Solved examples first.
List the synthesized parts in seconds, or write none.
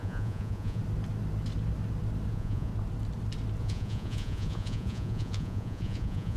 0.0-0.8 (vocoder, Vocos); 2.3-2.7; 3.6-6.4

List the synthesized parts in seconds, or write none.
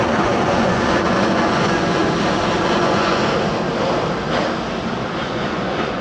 0.0-2.0 (vocoder, Vocos); 2.6-3.2; 5.2-6.0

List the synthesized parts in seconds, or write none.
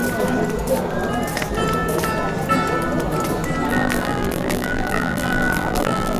3.7-6.2 (vocoder, BigVGAN v2)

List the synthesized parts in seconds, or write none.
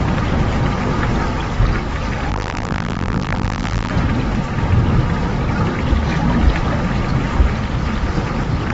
2.3-3.9 (vocoder, BigVGAN v2)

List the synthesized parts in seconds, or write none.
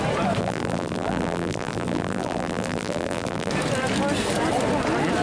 0.4-3.5 (vocoder, BigVGAN v2)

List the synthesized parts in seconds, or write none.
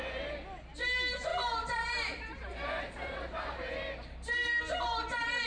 1.3-4.6 (vocoder, BigVGAN v2)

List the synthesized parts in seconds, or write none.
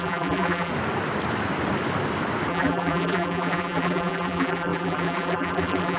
0.0-0.7 (vocoder, BigVGAN v2); 2.5-6.0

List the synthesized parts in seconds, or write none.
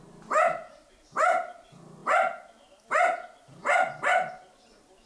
none